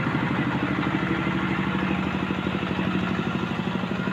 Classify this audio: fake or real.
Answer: real